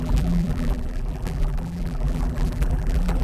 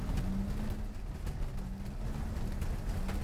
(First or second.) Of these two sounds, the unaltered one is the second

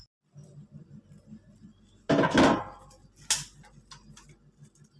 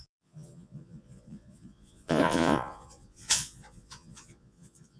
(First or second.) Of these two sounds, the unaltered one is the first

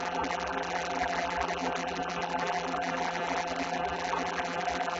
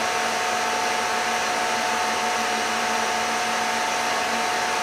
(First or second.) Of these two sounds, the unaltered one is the second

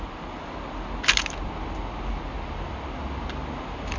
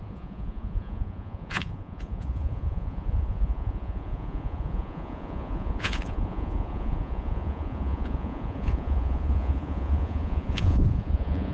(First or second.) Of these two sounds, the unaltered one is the first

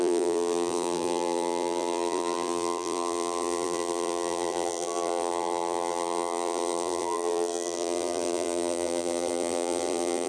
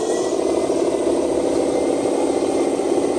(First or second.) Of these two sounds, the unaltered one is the second